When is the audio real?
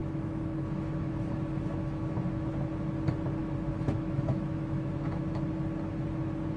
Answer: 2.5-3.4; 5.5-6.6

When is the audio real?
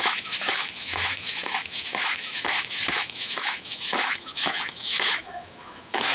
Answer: none